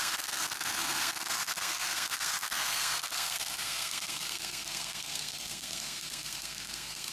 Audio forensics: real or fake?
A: fake